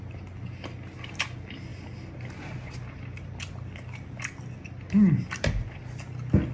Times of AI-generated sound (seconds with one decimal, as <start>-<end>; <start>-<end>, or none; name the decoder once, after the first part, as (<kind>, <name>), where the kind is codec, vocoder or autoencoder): none